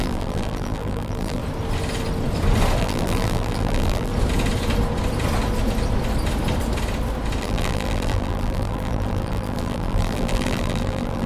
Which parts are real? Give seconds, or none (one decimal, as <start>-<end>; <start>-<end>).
1.4-2.8; 4.1-7.4